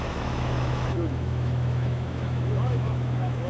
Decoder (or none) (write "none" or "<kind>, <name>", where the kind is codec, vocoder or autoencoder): autoencoder, DAC-VAE